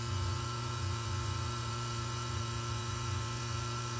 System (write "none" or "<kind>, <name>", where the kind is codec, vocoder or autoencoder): vocoder, Vocos